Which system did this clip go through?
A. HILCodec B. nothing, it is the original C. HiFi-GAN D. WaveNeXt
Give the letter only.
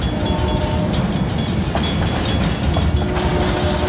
B